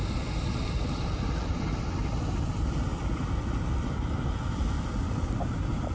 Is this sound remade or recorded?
recorded